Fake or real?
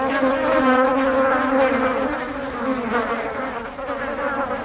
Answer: real